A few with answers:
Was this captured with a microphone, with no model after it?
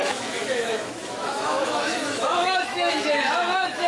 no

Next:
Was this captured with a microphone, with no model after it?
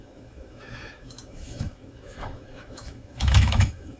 no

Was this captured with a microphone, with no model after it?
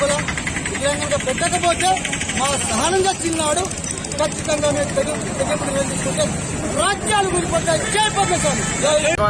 yes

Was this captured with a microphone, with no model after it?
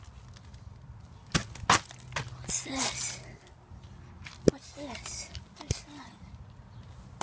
yes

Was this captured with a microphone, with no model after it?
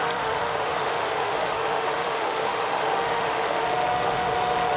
no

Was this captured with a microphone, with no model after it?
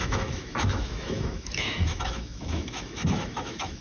no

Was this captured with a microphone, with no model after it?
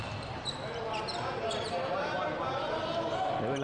yes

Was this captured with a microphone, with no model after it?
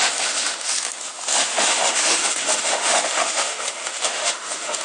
no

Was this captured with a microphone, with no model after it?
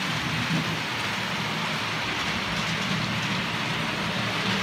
yes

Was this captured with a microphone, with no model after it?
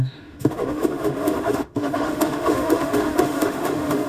no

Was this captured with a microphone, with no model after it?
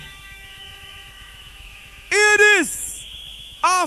no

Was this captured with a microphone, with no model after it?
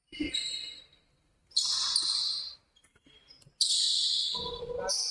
yes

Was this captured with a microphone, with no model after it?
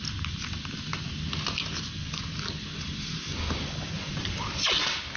yes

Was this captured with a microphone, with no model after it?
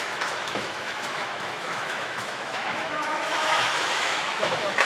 no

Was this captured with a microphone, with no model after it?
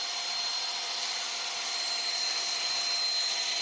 yes